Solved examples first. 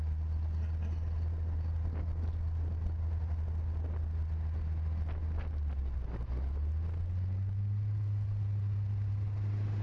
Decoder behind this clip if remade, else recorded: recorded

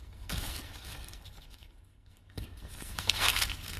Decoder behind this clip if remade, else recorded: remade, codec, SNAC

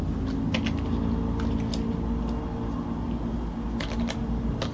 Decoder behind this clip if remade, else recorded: recorded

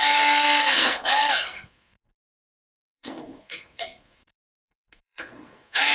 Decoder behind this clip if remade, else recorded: remade, codec, SNAC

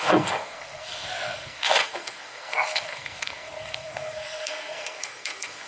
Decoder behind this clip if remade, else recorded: remade, codec, SNAC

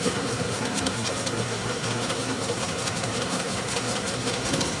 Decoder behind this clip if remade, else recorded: remade, codec, SNAC